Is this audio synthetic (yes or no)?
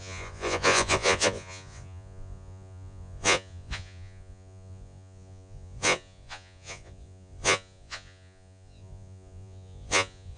yes